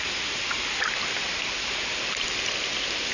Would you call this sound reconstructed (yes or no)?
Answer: yes